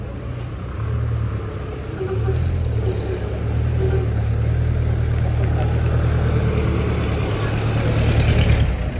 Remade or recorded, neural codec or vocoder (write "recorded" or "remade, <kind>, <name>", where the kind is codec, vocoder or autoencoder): recorded